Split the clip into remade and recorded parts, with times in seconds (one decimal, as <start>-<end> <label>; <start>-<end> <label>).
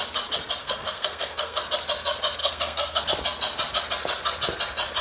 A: 0.0-0.6 recorded; 0.6-1.6 remade; 1.6-2.4 recorded; 2.4-3.0 remade; 3.0-5.0 recorded